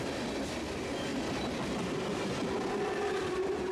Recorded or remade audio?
remade